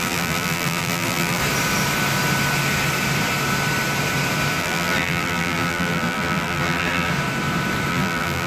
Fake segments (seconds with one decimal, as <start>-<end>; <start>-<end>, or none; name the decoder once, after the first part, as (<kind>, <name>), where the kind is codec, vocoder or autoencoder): 0.0-1.4 (vocoder, BigVGAN v2); 4.6-7.1; 7.9-8.5